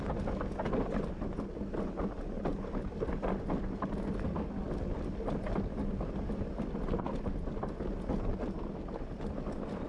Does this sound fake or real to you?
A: real